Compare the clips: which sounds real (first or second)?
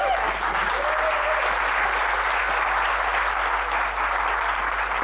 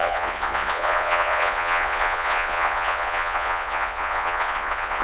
first